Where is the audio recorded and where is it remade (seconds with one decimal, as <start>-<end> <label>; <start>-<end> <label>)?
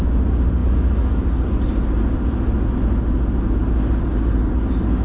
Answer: 0.0-5.0 recorded